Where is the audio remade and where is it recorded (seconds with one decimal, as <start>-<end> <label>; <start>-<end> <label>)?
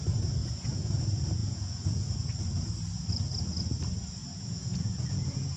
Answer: 0.0-0.4 recorded; 0.4-1.0 remade; 1.0-1.4 recorded; 1.4-2.1 remade; 2.1-4.2 recorded; 4.2-5.6 remade